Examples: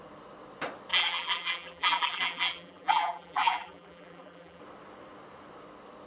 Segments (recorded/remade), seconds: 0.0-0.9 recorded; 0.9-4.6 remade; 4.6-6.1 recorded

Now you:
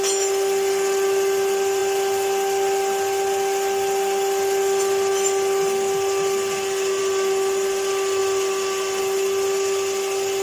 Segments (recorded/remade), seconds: 0.0-10.4 recorded

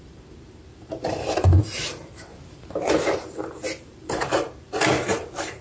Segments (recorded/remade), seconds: 0.0-5.6 remade

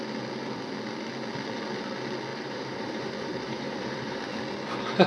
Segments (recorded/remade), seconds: 0.0-2.3 recorded; 2.3-4.3 remade; 4.3-5.1 recorded

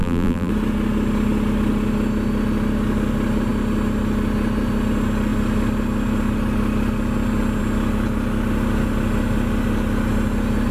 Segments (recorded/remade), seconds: 0.0-0.5 remade; 0.5-10.7 recorded